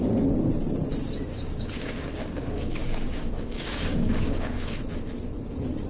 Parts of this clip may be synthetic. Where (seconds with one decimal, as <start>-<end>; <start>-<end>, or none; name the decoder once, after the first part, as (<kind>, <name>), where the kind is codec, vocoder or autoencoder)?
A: 1.3-4.8 (codec, DAC)